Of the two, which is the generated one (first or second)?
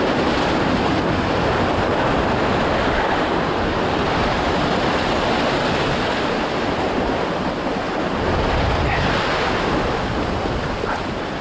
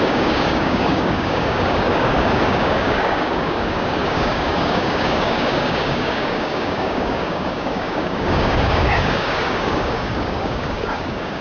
second